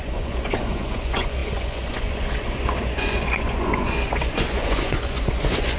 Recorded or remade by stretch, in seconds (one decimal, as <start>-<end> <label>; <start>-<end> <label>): 0.0-5.8 remade